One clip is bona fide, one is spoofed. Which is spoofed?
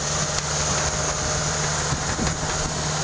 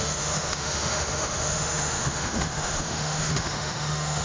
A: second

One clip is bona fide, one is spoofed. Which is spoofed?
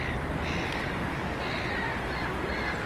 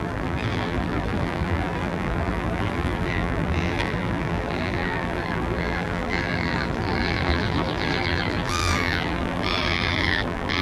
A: second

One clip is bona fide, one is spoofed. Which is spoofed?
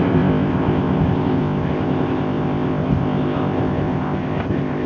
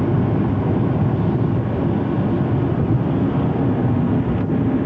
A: first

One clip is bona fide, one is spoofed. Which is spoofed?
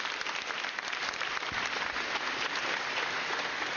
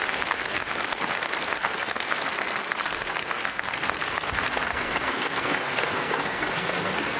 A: second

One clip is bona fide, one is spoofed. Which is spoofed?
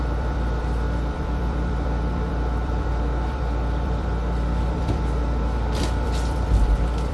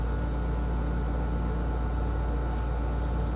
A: first